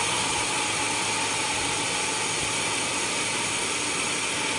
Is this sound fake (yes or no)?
yes